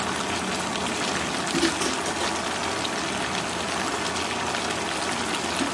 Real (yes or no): yes